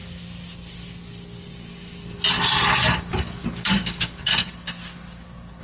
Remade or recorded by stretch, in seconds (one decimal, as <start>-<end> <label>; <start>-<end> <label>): 0.0-3.4 recorded; 3.4-4.3 remade; 4.3-5.6 recorded